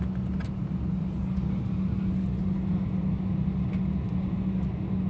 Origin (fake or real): real